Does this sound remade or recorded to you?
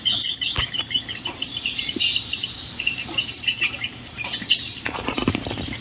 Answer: remade